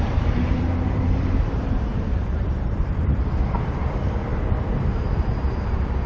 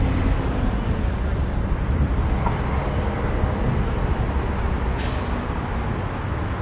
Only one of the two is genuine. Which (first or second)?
second